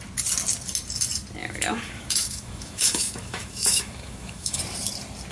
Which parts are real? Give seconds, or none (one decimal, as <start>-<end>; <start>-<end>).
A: 0.0-1.4; 4.6-5.3